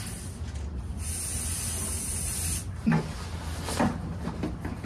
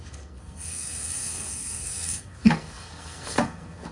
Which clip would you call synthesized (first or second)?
second